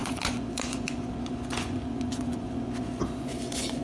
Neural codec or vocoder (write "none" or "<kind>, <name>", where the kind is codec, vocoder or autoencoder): vocoder, Vocos